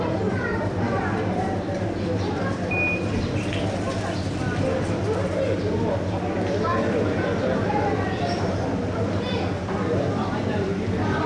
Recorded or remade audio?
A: recorded